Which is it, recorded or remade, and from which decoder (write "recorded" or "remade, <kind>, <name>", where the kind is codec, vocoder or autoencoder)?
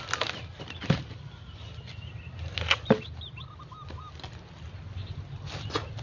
recorded